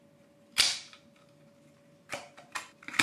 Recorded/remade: recorded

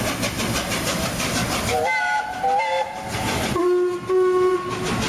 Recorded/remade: recorded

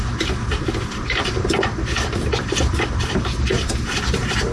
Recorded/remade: remade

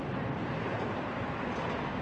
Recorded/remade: recorded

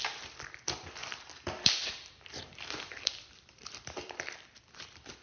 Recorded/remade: remade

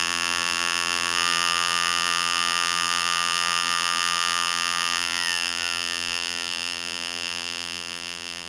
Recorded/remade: remade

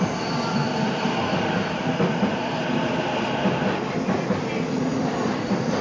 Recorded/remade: recorded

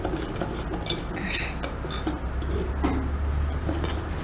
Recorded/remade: recorded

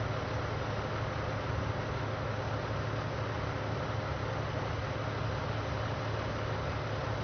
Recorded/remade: recorded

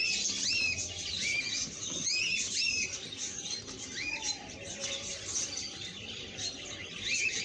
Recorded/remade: recorded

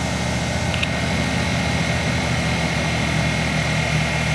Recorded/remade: recorded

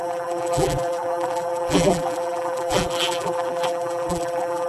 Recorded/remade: remade